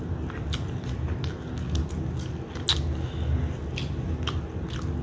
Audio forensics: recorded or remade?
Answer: recorded